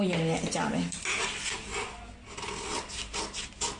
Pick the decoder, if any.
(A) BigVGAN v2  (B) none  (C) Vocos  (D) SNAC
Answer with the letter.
B